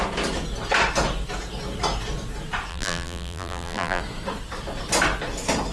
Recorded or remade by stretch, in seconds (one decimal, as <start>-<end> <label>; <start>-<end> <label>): 0.0-2.7 recorded; 2.7-4.0 remade; 4.0-5.7 recorded